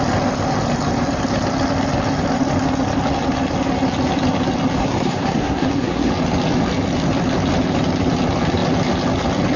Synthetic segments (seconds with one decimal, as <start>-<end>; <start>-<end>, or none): 4.8-6.1